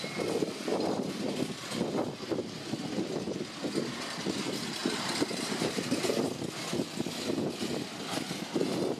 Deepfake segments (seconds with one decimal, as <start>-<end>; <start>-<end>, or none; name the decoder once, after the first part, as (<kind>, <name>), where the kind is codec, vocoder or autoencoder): 0.7-1.4 (vocoder, BigVGAN v2); 4.8-6.2